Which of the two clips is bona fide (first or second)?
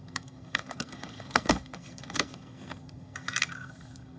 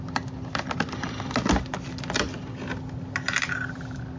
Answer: second